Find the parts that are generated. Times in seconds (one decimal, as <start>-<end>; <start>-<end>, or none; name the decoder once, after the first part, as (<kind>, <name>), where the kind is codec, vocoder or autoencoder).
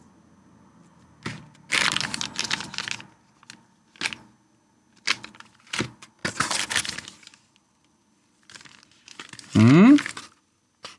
none